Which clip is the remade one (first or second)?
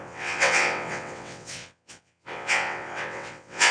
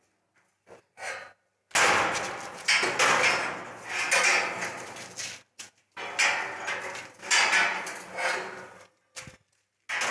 first